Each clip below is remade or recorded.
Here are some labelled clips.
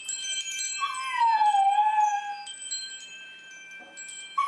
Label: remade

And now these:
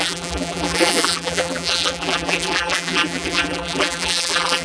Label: remade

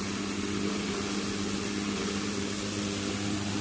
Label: recorded